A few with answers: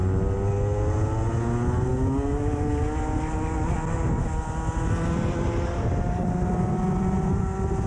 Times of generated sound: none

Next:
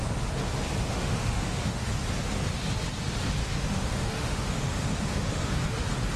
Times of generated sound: 0.9-1.9 (autoencoder, DAC-VAE); 3.4-5.5

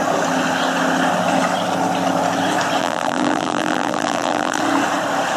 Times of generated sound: 2.8-4.6 (vocoder, BigVGAN v2)

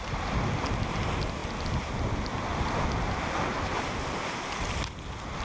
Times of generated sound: none

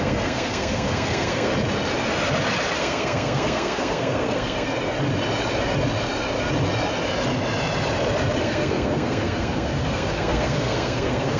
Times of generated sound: 0.0-1.5 (codec, SNAC); 2.8-4.7; 8.4-11.4

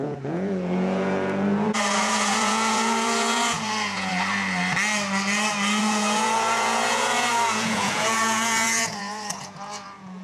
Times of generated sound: 0.0-4.1 (vocoder, Vocos); 5.8-10.2

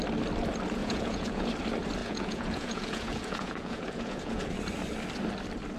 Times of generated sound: 0.8-1.5 (vocoder, Vocos); 2.0-4.5

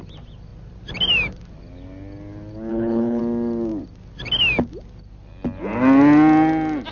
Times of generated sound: 2.7-3.2 (codec, HILCodec)